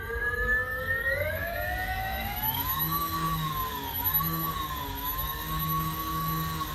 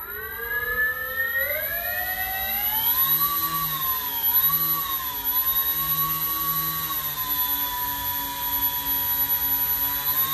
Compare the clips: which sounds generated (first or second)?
first